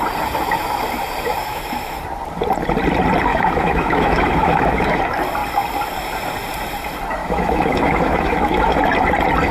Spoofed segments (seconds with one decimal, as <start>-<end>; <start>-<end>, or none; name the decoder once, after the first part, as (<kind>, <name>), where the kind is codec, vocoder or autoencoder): 1.4-2.0 (autoencoder, DAC-VAE); 3.3-5.0; 7.2-8.8